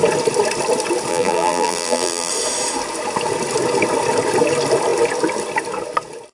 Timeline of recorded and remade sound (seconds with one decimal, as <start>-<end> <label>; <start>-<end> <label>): 0.0-1.1 recorded; 1.1-2.3 remade; 2.3-6.3 recorded